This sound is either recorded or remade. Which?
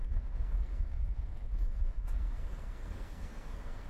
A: remade